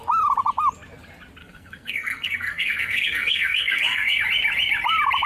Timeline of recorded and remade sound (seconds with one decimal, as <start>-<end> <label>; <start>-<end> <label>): 0.0-1.4 recorded; 1.4-4.2 remade; 4.2-5.3 recorded